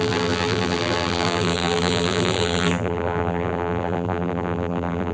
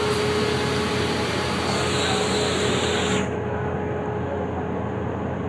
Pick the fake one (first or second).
first